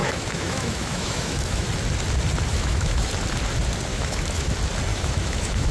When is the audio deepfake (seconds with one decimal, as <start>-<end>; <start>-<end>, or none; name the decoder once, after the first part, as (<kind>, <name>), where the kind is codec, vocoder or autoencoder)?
0.0-1.7 (autoencoder, DAC-VAE); 2.5-3.1; 3.9-4.5; 4.9-5.7